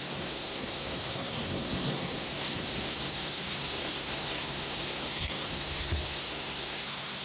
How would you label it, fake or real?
fake